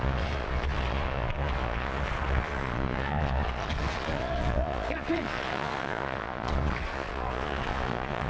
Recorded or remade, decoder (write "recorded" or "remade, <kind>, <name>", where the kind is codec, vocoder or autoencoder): remade, vocoder, Vocos